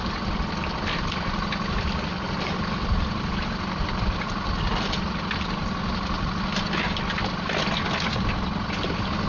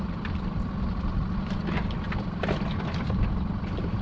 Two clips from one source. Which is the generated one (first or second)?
second